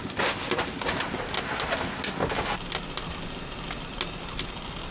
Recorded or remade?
recorded